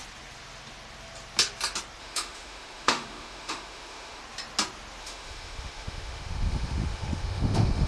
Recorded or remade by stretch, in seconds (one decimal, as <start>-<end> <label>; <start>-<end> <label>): 0.0-2.0 recorded; 2.0-4.2 remade; 4.2-5.0 recorded; 5.0-7.9 remade